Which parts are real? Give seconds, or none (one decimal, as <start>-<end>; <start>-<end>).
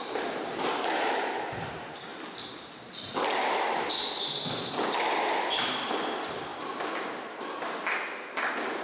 0.0-2.1; 5.6-8.8